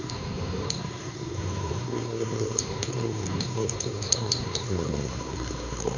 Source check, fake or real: fake